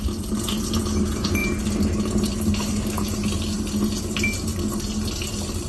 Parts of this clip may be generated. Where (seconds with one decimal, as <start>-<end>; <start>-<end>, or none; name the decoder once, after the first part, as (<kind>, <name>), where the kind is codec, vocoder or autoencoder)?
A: none